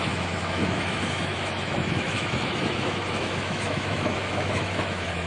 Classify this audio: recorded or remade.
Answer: remade